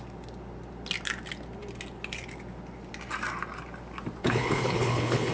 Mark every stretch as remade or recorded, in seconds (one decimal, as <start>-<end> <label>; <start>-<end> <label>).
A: 0.0-4.2 recorded; 4.2-5.3 remade